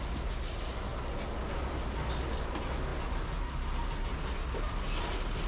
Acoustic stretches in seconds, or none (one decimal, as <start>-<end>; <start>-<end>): 0.0-5.5